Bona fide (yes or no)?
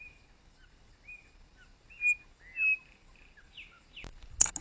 yes